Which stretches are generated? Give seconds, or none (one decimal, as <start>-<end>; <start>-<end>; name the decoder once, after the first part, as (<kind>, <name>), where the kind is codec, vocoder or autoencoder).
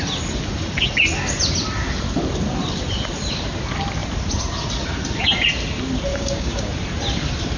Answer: 6.1-6.7 (codec, DAC)